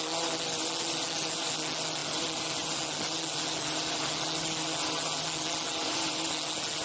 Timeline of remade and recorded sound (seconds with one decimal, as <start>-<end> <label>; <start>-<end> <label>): 0.0-6.8 recorded